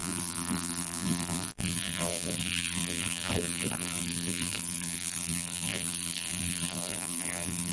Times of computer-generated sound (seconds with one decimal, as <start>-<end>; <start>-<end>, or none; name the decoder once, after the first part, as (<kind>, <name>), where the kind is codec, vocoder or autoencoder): 0.0-7.7 (vocoder, BigVGAN v2)